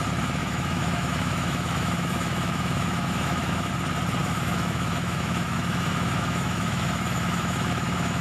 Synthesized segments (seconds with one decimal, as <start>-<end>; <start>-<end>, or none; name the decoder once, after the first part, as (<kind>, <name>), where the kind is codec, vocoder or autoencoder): 0.4-3.7 (autoencoder, DAC-VAE); 4.2-8.2